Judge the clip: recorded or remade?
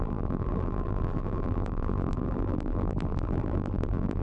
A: remade